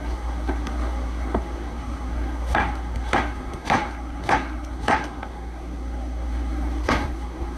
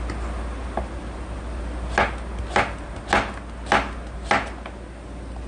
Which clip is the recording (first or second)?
second